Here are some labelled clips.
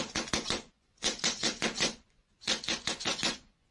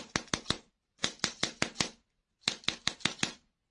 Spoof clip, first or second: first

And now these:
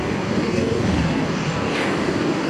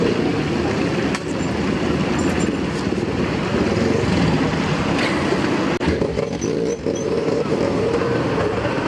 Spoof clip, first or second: first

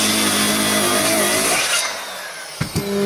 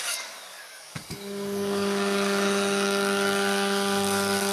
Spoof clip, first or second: second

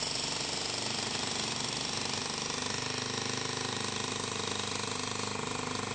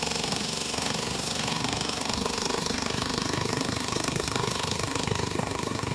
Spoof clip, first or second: second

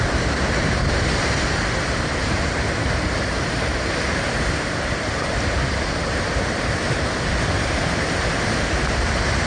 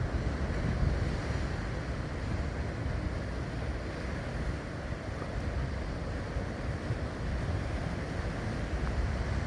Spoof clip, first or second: first